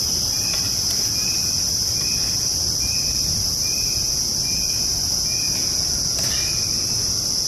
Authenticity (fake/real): real